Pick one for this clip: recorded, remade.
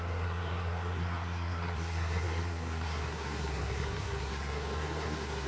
remade